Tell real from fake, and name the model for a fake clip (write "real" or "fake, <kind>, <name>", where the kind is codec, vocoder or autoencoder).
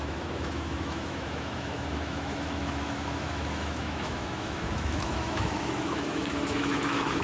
fake, autoencoder, DAC-VAE